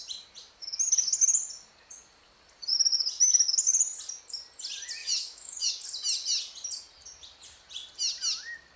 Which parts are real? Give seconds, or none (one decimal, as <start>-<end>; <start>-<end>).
0.0-5.0; 5.7-8.8